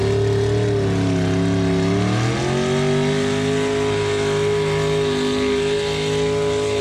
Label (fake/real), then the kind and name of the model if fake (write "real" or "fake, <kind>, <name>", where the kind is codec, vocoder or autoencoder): real